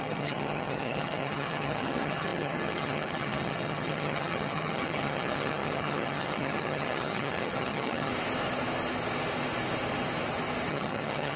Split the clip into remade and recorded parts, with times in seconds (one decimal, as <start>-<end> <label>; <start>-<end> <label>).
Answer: 0.0-8.1 remade; 8.1-10.7 recorded; 10.7-11.4 remade